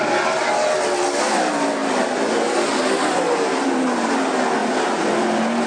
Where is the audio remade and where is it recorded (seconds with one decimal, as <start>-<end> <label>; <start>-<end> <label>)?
0.0-5.7 recorded